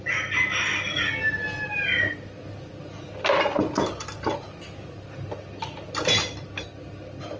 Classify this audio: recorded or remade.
recorded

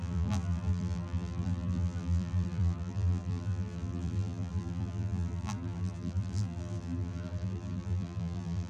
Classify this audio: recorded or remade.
remade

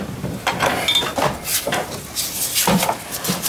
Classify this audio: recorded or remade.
recorded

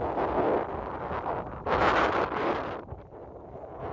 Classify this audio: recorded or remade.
recorded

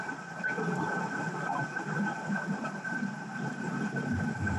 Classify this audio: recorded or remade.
remade